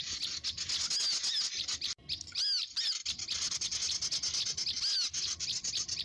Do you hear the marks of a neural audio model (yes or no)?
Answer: no